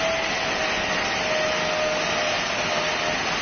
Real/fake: real